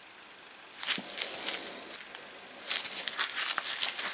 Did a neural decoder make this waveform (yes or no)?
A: no